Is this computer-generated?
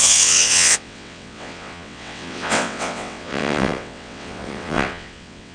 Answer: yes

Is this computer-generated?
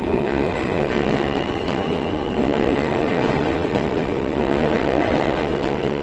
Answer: yes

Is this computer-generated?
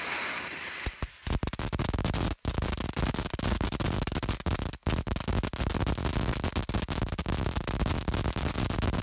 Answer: no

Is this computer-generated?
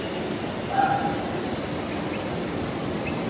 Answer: no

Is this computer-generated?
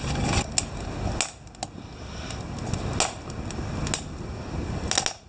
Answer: no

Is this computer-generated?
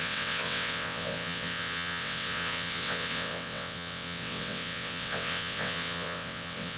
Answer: yes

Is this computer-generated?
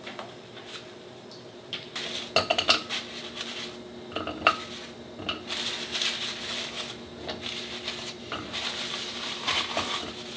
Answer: no